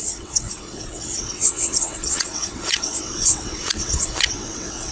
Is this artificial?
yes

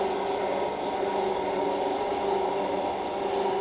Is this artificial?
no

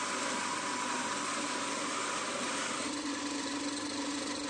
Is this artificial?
no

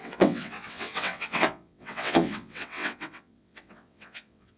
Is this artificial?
yes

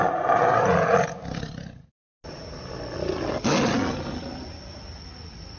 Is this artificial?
no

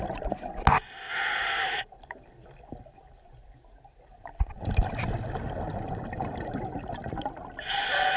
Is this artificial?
no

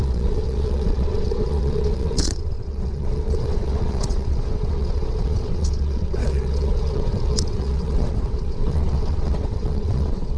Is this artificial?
yes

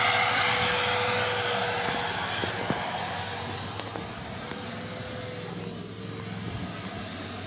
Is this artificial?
no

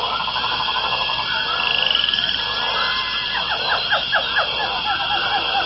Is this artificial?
no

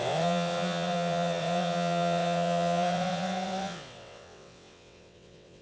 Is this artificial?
yes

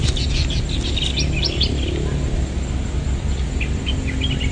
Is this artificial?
no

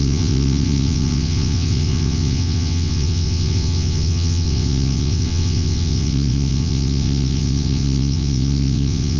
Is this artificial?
yes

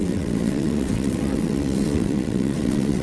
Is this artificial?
yes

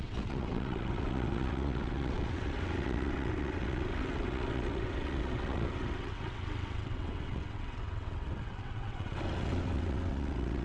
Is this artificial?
yes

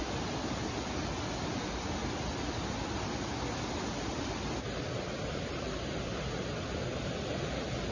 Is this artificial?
no